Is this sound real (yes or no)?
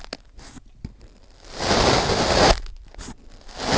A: yes